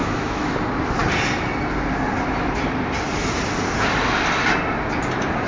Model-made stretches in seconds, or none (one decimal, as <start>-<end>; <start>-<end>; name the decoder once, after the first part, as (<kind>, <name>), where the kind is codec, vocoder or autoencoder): 0.0-0.6 (autoencoder, DAC-VAE)